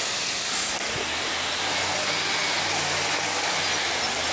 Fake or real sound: real